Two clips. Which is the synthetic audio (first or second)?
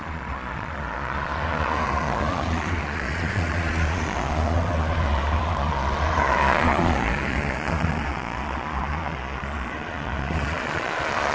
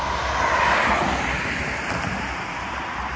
first